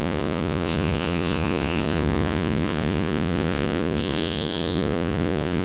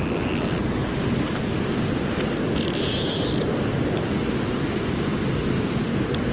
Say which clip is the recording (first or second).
second